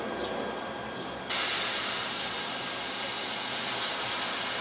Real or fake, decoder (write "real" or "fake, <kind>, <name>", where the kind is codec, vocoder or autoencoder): real